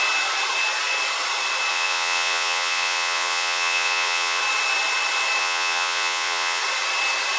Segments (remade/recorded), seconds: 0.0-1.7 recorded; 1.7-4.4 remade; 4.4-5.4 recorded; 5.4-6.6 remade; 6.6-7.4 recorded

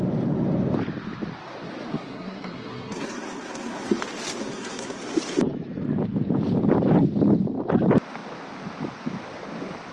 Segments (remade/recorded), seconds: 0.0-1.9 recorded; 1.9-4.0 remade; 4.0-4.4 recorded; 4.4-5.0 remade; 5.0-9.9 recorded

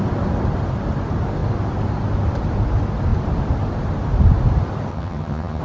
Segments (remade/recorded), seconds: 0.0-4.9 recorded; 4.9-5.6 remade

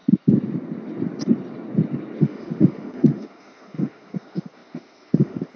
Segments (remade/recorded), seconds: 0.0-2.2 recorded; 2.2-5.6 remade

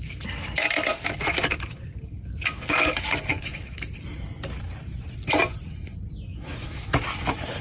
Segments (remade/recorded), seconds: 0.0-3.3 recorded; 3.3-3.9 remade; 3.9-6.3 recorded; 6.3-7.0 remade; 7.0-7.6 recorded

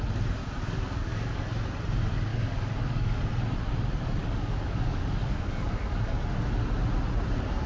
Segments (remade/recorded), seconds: 0.0-0.4 recorded; 0.4-1.4 remade; 1.4-2.3 recorded; 2.3-3.3 remade; 3.3-4.2 recorded; 4.2-6.2 remade; 6.2-7.7 recorded

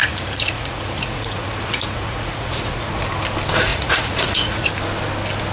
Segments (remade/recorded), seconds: 0.0-3.0 remade; 3.0-3.7 recorded; 3.7-4.7 remade; 4.7-5.5 recorded